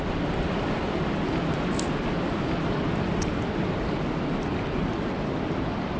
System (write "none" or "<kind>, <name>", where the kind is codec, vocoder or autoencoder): none